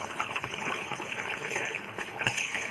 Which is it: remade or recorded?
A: remade